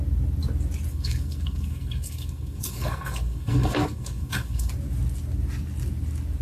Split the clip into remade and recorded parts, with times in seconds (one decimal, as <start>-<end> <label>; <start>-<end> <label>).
0.0-0.9 recorded; 0.9-4.7 remade; 4.7-6.4 recorded